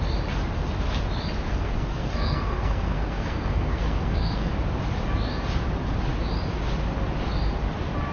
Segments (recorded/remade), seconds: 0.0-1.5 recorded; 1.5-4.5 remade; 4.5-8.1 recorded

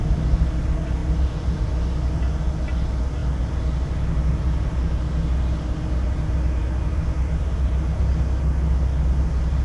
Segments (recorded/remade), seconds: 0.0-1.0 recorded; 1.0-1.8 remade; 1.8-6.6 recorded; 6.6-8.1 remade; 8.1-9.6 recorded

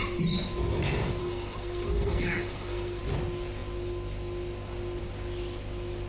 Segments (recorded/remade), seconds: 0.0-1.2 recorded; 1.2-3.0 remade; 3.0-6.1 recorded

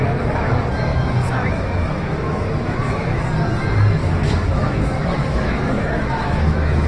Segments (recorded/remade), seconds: 0.0-0.9 recorded; 0.9-3.2 remade; 3.2-4.0 recorded; 4.0-6.9 remade